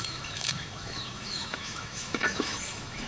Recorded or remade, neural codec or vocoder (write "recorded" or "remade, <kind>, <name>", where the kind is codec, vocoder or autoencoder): remade, autoencoder, DAC-VAE